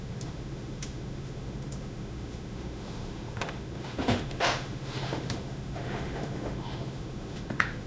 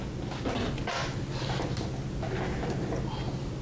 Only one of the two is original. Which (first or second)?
second